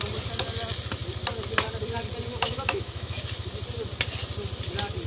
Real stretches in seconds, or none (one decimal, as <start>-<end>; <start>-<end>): 0.0-2.3; 3.2-5.1